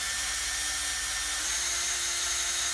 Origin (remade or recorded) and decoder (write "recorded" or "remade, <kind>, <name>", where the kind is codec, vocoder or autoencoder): recorded